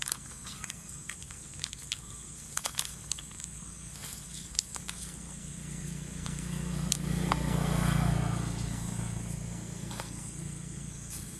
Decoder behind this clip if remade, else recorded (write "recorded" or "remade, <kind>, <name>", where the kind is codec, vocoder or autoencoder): remade, codec, SNAC